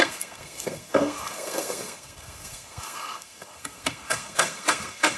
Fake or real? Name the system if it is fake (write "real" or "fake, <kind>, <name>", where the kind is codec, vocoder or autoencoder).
fake, codec, SNAC